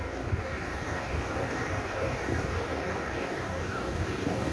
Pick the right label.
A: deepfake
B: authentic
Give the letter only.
A